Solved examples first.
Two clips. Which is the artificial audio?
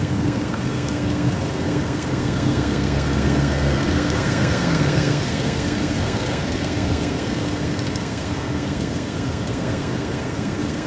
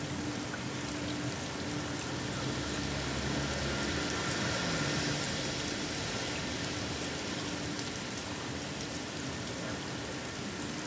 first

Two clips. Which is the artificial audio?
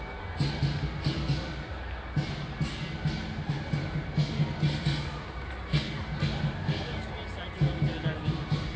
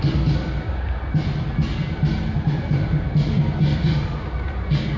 second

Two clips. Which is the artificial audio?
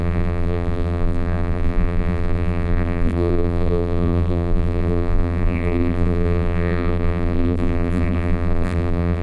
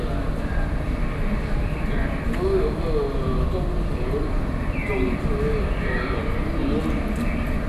first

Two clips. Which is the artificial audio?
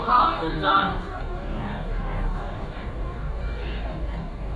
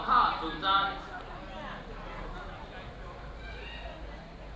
first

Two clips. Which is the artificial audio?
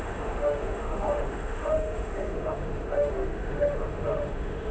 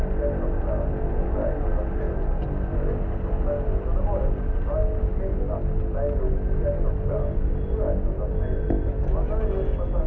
first